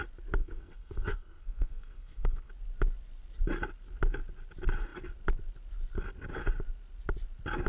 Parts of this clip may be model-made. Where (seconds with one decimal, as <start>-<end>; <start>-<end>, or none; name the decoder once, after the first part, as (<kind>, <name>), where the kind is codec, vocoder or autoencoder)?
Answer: 0.4-2.5 (codec, SNAC)